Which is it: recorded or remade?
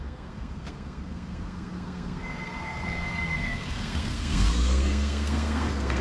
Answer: remade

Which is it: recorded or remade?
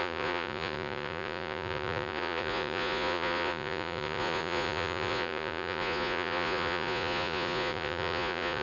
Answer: remade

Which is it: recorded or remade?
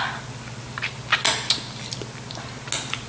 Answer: recorded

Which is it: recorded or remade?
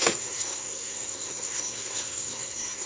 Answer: remade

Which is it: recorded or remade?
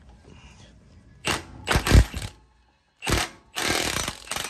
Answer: recorded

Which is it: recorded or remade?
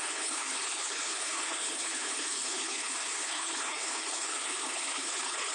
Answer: remade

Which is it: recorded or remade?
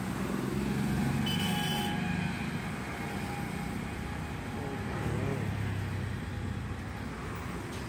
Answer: recorded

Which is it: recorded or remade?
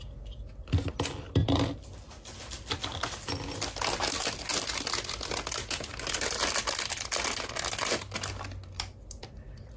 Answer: recorded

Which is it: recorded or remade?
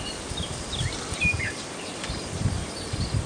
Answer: recorded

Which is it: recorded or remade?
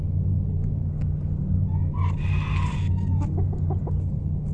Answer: recorded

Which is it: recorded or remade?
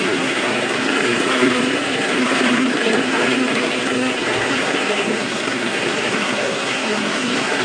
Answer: remade